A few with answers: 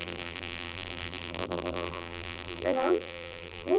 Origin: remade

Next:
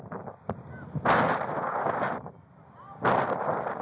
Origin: recorded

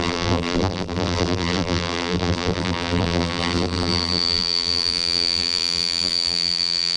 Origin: remade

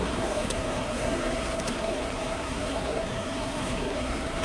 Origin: remade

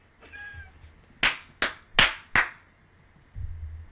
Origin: recorded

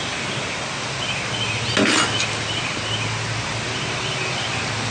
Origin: recorded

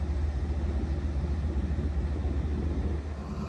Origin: recorded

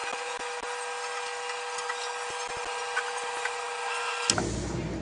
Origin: recorded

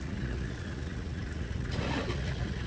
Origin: remade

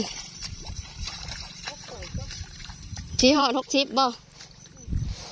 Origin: remade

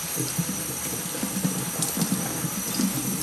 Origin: recorded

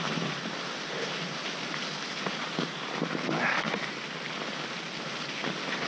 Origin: recorded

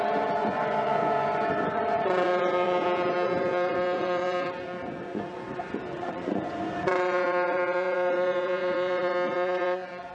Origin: remade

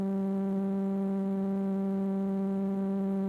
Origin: recorded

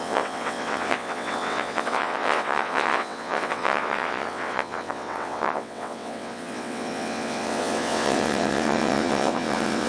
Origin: remade